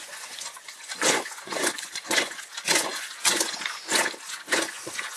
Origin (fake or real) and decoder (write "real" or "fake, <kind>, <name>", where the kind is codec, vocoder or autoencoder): fake, vocoder, Vocos